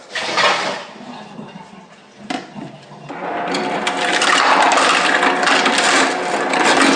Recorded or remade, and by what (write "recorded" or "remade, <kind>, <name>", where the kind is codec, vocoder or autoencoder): recorded